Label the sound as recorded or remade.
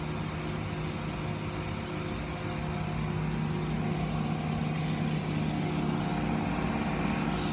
recorded